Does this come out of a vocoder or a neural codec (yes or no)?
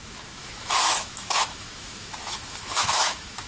yes